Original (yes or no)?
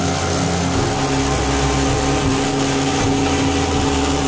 yes